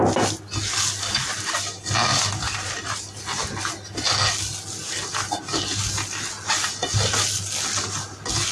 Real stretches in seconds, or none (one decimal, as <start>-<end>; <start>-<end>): 0.0-2.1; 2.9-8.5